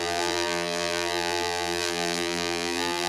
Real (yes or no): no